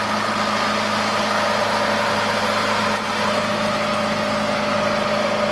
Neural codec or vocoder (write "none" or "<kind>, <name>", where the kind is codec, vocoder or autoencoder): none